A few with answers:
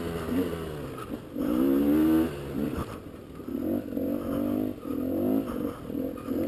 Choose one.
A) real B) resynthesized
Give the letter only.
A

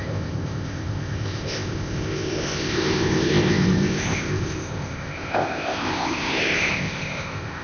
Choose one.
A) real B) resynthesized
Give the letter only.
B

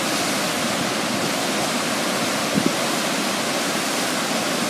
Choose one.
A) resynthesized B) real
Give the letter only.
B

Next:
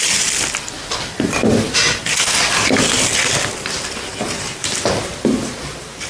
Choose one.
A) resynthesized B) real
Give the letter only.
B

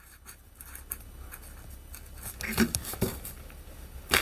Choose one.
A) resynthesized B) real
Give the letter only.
B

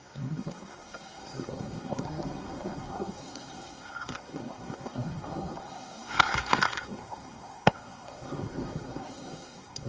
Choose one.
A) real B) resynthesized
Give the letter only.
B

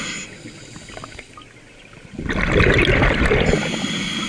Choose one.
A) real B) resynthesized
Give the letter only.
A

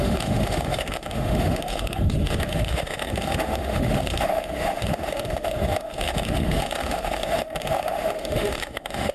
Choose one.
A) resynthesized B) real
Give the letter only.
A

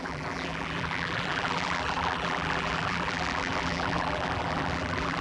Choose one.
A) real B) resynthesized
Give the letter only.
B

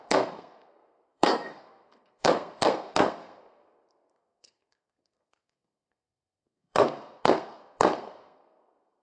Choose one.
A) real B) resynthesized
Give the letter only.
B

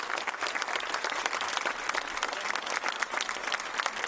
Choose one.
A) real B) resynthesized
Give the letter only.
A